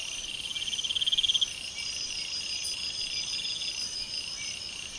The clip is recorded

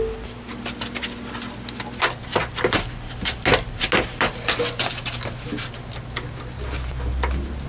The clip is recorded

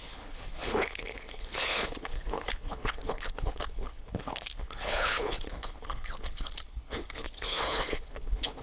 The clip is remade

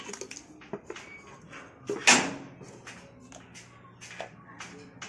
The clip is recorded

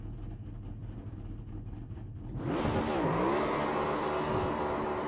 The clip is recorded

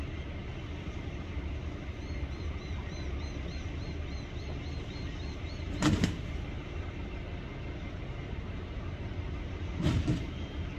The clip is recorded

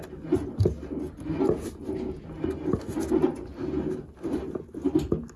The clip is recorded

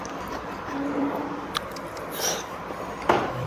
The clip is remade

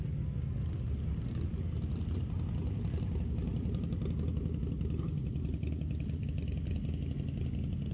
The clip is recorded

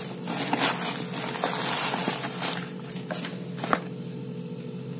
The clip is recorded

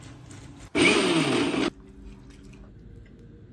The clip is recorded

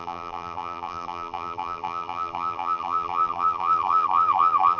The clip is remade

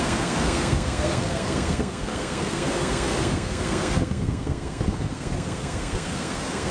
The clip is remade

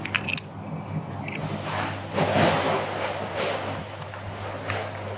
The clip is recorded